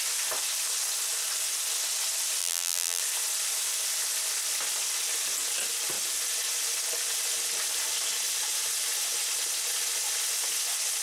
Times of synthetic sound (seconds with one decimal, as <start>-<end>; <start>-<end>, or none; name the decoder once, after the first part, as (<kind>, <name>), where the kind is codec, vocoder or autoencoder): 2.4-3.0 (vocoder, BigVGAN v2)